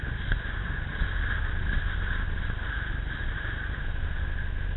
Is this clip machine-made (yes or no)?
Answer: no